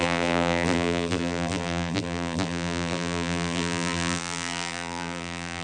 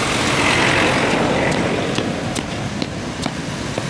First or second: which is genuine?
second